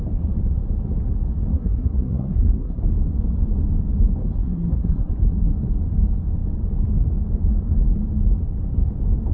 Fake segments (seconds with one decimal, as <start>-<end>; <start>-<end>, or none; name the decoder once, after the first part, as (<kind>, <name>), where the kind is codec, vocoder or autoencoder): 1.5-2.8 (codec, SNAC); 4.2-5.1